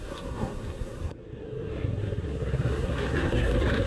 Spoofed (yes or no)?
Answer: yes